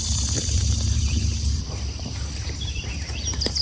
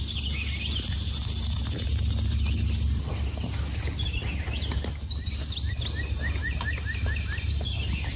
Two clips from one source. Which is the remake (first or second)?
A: first